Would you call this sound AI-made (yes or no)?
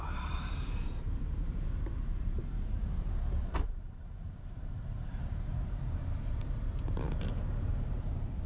yes